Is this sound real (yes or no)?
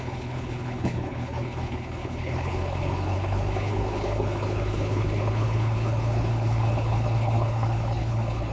no